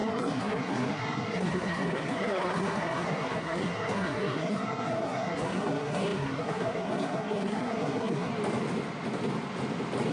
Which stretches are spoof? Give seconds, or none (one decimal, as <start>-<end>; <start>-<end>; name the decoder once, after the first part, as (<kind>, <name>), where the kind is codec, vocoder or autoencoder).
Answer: 0.0-8.3 (codec, SNAC)